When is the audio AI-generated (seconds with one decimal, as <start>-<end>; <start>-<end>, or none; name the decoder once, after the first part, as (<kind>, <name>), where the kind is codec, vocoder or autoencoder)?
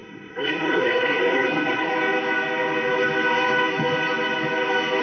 0.0-1.9 (codec, SNAC)